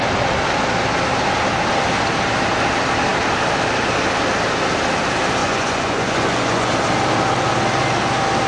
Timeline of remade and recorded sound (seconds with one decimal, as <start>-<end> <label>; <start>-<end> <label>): 0.0-5.4 recorded; 5.4-6.7 remade; 6.7-8.5 recorded